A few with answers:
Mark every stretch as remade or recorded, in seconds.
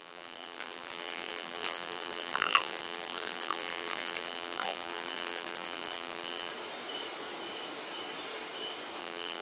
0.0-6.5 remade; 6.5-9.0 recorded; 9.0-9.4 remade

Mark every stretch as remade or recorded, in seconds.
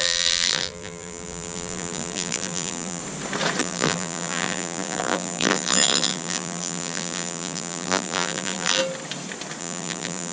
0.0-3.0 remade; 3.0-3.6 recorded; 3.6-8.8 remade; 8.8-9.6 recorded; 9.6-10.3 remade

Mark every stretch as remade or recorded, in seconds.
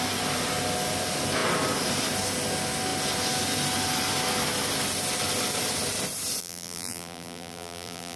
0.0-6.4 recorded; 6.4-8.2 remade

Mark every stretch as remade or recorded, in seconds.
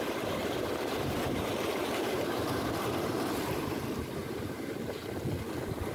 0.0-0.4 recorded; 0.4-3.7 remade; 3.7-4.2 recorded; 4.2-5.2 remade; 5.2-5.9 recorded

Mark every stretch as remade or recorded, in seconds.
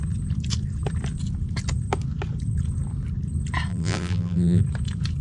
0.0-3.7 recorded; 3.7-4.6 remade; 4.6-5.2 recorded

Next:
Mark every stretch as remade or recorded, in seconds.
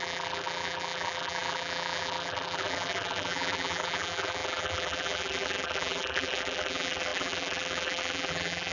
0.0-8.7 remade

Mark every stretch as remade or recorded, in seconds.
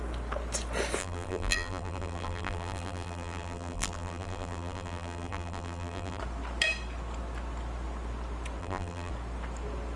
0.0-1.0 recorded; 1.0-6.2 remade; 6.2-8.6 recorded; 8.6-9.1 remade; 9.1-10.0 recorded